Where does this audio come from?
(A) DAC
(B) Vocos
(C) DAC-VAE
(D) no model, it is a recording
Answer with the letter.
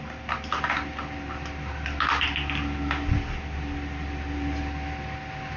D